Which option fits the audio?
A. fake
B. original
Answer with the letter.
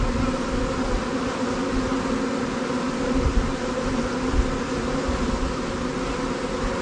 B